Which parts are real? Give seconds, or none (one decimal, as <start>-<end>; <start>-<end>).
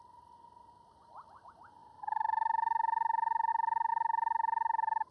0.0-5.1